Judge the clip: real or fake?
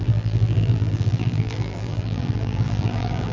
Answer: fake